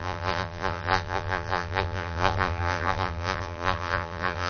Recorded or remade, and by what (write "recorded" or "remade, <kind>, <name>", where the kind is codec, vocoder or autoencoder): remade, vocoder, BigVGAN v2